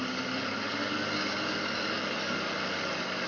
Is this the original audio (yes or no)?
no